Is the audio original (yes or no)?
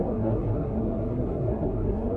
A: no